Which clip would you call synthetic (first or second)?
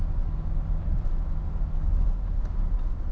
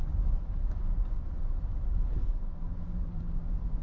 second